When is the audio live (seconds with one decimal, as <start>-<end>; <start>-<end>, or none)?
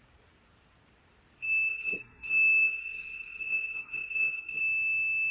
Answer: 0.0-1.7; 4.6-5.3